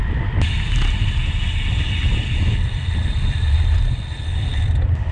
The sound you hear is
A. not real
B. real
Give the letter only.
B